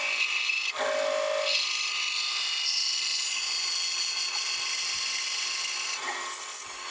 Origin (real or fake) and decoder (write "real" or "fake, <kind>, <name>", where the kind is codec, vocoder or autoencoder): real